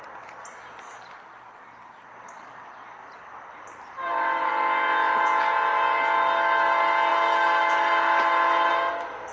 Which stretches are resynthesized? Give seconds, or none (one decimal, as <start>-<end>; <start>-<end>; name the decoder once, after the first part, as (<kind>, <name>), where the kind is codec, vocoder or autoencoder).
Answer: 3.0-4.5 (vocoder, BigVGAN v2)